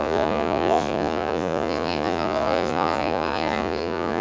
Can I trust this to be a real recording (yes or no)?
no